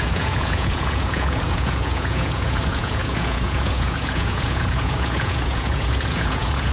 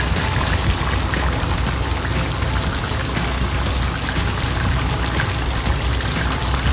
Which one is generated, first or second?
first